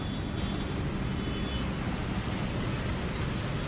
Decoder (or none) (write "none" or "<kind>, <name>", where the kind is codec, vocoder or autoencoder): none